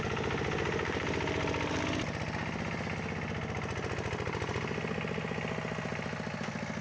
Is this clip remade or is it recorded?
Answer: recorded